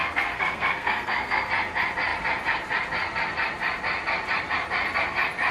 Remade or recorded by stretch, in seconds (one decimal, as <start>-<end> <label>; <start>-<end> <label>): 0.0-1.5 remade; 1.5-5.5 recorded